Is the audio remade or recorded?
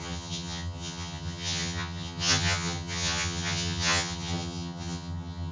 remade